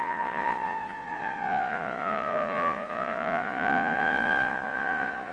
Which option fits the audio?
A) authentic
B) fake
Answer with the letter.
B